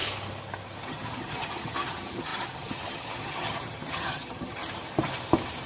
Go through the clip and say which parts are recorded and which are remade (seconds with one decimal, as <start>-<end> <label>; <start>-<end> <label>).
0.0-0.9 recorded; 0.9-4.6 remade; 4.6-5.7 recorded